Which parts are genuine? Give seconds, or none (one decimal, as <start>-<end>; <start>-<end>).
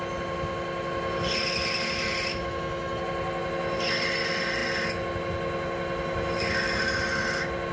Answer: 0.0-2.3; 3.0-7.7